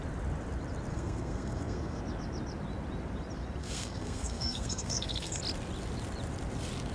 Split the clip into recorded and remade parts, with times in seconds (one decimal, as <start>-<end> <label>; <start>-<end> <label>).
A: 0.0-0.9 recorded; 0.9-2.0 remade; 2.0-3.6 recorded; 3.6-5.4 remade; 5.4-6.9 recorded